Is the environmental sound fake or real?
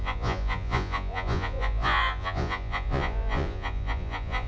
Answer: fake